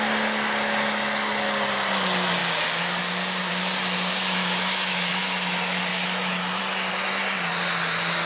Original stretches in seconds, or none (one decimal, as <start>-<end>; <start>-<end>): 0.0-4.4; 5.1-5.9; 6.6-8.3